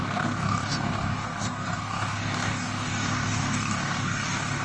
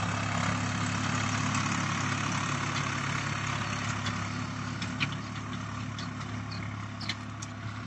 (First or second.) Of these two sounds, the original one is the second